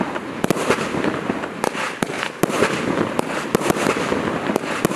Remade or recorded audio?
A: recorded